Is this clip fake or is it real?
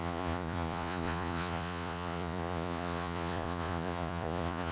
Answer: fake